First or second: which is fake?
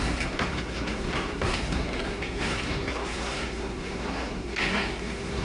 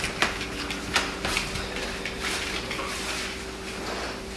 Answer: first